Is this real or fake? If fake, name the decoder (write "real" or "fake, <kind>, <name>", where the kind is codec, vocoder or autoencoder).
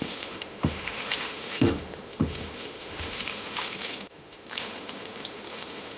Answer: fake, autoencoder, DAC-VAE